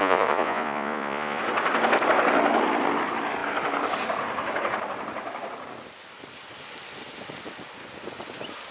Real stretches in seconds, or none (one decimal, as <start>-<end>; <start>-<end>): 1.4-8.7